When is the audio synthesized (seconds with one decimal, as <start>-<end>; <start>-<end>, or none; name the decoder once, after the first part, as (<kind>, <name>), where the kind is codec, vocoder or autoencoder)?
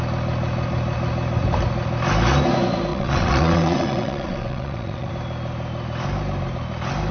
2.9-5.1 (vocoder, WaveNeXt)